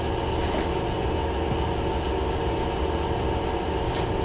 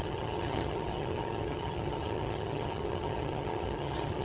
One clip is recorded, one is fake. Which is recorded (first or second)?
first